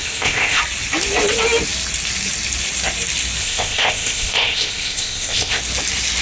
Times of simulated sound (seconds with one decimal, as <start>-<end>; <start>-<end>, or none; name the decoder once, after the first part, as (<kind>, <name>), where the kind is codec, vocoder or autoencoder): 0.0-0.6 (codec, ZipCodec); 3.4-5.6